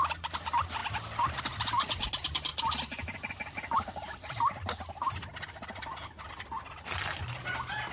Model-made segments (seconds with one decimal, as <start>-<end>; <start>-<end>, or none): none